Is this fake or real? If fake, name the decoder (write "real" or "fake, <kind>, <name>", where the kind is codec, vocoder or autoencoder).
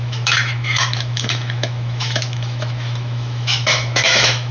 fake, autoencoder, DAC-VAE